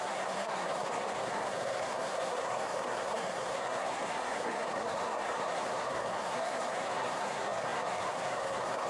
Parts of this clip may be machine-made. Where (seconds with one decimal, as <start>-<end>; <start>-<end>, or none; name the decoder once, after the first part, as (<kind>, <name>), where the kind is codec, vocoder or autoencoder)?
0.0-8.9 (codec, SNAC)